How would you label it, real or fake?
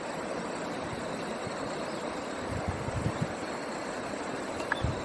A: fake